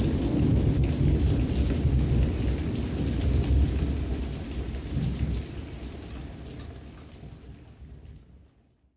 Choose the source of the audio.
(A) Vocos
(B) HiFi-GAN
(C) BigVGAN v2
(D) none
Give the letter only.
D